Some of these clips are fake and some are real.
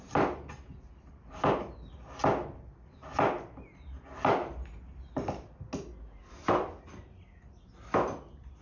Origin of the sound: real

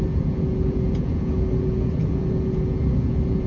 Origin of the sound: fake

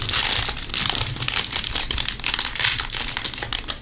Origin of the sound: real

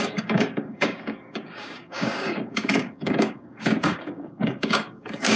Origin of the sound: fake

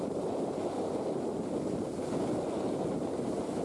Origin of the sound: real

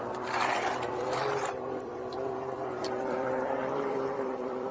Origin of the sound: fake